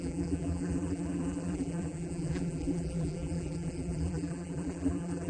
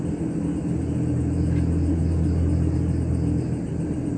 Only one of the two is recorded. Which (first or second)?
second